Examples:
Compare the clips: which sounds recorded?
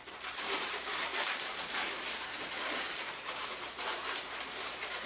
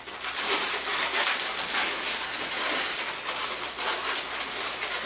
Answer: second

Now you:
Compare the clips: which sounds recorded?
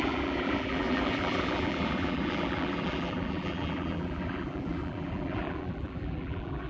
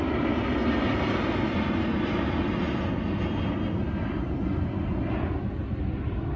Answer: second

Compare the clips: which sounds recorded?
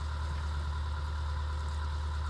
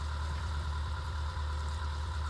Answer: first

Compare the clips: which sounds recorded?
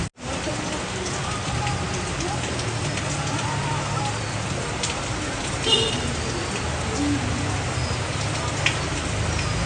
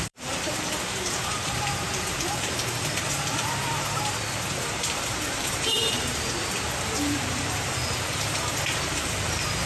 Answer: first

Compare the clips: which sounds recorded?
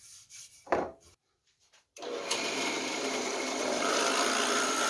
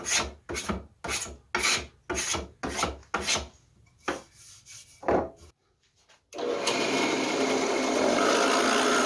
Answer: second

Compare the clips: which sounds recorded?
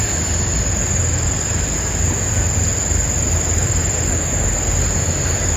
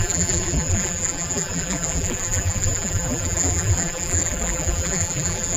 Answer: first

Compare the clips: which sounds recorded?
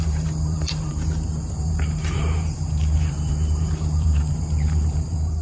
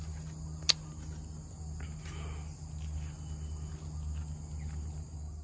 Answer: second